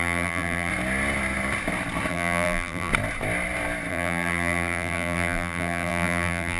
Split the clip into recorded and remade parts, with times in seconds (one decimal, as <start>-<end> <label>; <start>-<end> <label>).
0.0-0.7 remade; 0.7-2.1 recorded; 2.1-2.9 remade; 2.9-3.9 recorded; 3.9-6.6 remade